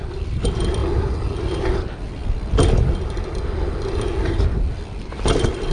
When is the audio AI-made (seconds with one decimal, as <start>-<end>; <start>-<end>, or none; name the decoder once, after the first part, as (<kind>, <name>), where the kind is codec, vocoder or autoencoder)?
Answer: 0.0-0.8 (vocoder, BigVGAN v2); 4.2-5.7